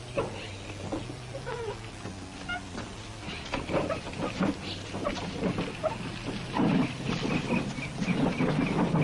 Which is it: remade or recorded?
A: recorded